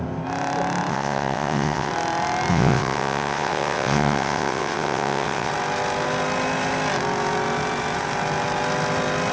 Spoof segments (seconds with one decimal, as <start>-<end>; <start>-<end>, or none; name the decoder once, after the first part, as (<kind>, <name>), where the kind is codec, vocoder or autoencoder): 0.9-1.9 (vocoder, WaveNeXt); 2.5-5.5

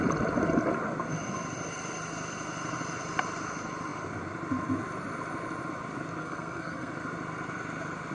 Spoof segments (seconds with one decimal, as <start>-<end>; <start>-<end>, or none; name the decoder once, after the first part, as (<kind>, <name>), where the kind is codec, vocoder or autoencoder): 6.2-6.9 (codec, SNAC)

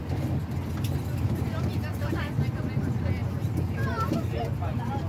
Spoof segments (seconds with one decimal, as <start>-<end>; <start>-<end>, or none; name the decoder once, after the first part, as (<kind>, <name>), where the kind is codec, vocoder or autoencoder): none

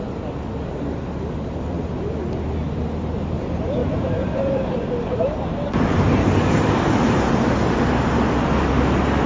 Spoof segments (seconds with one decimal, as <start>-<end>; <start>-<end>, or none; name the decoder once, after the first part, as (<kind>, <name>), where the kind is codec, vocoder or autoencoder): 3.8-7.3 (vocoder, BigVGAN v2)

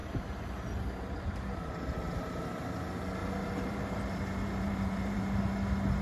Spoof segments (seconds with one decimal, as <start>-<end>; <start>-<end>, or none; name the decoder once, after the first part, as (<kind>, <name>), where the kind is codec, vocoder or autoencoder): 0.0-1.7 (vocoder, BigVGAN v2); 3.2-5.2

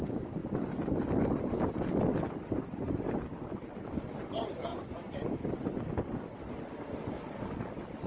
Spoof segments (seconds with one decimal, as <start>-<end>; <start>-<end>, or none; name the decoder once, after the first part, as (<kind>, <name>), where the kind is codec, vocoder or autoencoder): 4.7-5.3 (vocoder, Vocos)

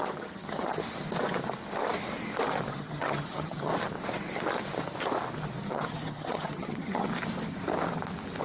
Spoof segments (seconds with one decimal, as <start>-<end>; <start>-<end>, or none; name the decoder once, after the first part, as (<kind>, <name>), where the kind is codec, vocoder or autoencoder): 0.0-0.8 (vocoder, HiFi-GAN); 2.7-3.7; 5.7-7.1